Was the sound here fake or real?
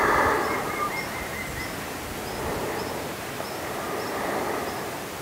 real